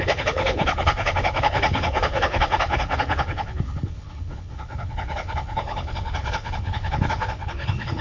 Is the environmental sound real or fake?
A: fake